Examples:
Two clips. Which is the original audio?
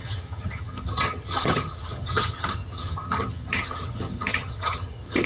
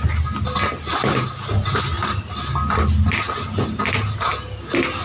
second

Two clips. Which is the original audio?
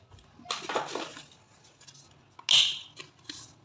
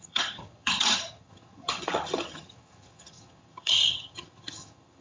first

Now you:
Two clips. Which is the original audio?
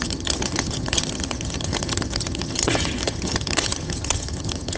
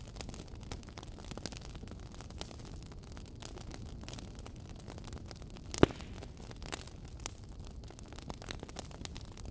second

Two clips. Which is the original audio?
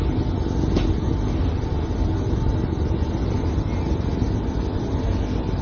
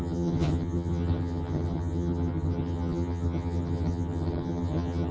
first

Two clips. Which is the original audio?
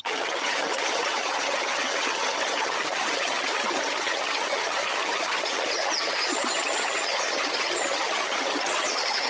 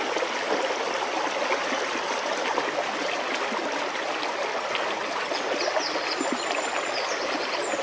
second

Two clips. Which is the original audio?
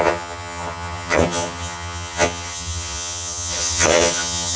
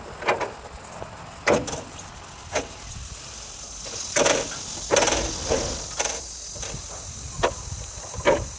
second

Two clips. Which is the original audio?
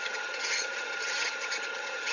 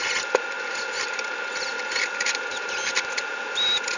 second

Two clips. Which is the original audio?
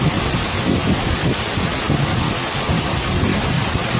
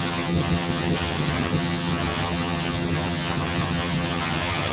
first